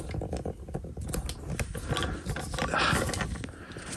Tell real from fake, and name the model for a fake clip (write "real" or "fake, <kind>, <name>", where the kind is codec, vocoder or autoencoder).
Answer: real